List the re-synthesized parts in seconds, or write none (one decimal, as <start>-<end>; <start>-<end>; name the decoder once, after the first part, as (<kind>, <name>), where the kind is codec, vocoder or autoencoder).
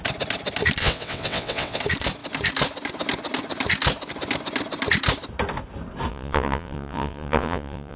0.8-1.8 (vocoder, WaveNeXt); 6.1-8.0